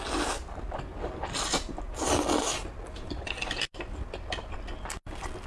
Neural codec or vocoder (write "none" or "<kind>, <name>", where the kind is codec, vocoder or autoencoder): none